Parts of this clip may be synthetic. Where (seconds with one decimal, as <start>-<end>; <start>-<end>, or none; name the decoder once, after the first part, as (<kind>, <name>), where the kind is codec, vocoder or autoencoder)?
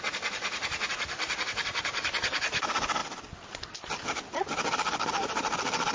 none